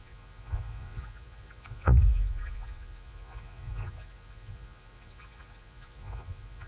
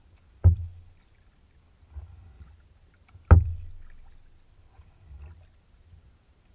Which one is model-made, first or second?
first